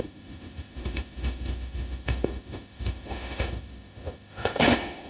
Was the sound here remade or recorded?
remade